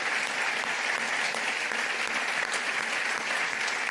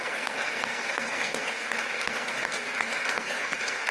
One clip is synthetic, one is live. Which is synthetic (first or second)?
second